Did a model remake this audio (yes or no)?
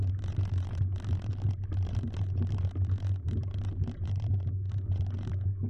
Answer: no